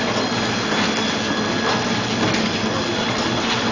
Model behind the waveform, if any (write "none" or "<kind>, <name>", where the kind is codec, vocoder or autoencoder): none